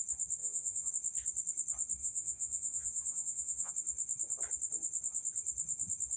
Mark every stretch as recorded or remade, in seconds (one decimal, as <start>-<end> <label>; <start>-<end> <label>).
0.0-0.4 recorded; 0.4-0.9 remade; 0.9-2.0 recorded; 2.0-3.7 remade; 3.7-6.2 recorded